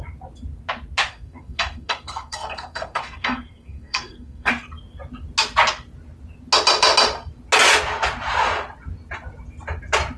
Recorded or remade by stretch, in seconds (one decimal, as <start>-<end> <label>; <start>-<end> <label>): 0.0-1.1 recorded; 1.1-4.5 remade; 4.5-10.2 recorded